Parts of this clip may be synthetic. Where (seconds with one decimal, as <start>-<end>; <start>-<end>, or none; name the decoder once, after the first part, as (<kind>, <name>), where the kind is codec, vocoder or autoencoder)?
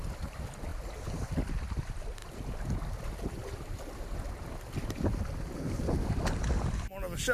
none